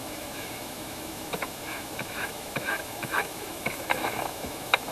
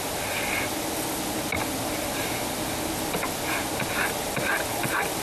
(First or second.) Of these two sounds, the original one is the second